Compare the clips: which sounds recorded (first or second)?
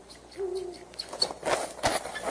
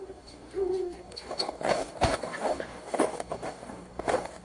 first